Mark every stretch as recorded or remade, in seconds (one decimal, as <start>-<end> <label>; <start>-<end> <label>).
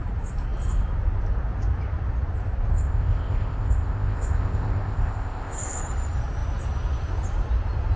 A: 0.0-2.7 recorded; 2.7-5.8 remade; 5.8-8.0 recorded